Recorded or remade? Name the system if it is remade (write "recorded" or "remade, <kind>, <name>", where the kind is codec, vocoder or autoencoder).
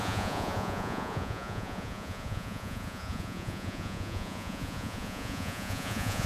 remade, vocoder, Vocos